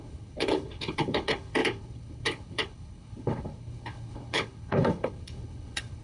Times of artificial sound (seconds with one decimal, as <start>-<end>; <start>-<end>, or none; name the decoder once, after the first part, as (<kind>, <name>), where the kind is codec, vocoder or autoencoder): 0.0-6.0 (codec, HILCodec)